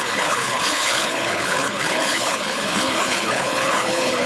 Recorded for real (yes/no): no